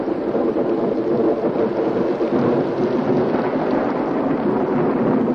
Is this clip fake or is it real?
real